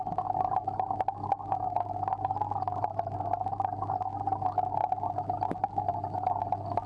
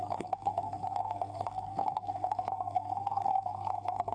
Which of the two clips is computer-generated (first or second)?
second